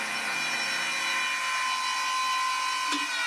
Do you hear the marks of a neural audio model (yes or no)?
no